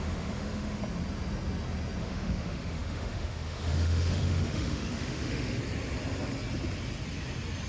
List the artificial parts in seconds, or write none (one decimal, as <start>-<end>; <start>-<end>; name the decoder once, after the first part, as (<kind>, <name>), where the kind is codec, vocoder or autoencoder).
0.0-0.8 (autoencoder, DAC-VAE); 2.0-5.6